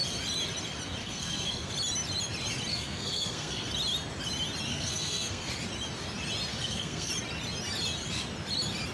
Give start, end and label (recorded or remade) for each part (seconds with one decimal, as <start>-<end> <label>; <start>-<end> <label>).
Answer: 0.0-1.0 recorded; 1.0-1.7 remade; 1.7-2.7 recorded; 2.7-3.7 remade; 3.7-4.7 recorded; 4.7-5.5 remade; 5.5-6.5 recorded; 6.5-7.1 remade; 7.1-8.9 recorded